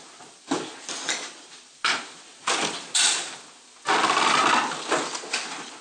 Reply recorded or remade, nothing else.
recorded